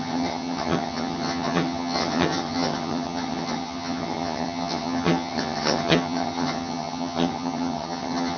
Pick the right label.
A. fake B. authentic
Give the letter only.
A